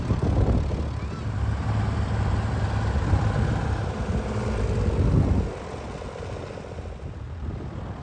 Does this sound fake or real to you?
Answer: real